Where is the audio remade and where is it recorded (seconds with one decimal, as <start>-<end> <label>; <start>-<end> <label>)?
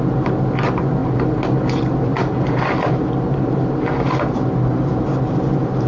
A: 0.0-5.9 recorded